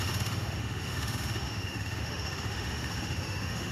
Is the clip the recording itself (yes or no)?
no